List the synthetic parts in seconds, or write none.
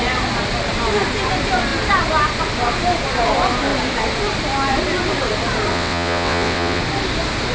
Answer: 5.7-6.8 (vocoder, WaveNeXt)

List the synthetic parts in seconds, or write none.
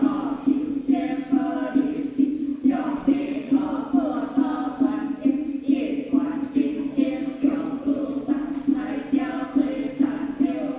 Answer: 2.5-3.6 (vocoder, WaveNeXt); 7.4-8.3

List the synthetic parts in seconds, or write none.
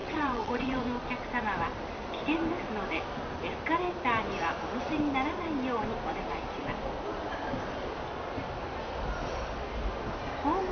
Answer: 0.0-0.8 (vocoder, WaveNeXt)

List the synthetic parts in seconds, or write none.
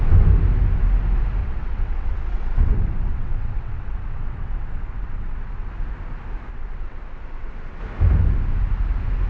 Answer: 1.4-5.7 (vocoder, WaveNeXt); 6.5-7.8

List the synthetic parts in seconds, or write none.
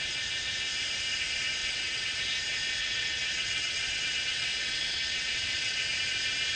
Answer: 1.6-2.2 (vocoder, WaveNeXt); 2.8-5.8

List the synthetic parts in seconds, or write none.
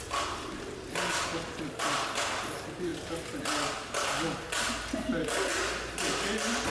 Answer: none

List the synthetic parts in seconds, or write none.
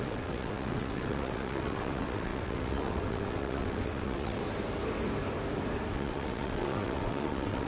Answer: 0.0-4.4 (vocoder, WaveNeXt); 5.9-7.7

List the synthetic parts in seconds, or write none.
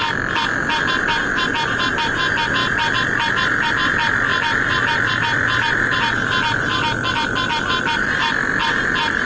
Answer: none